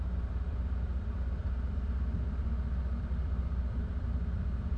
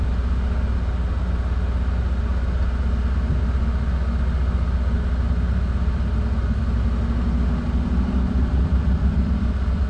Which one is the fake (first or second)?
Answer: first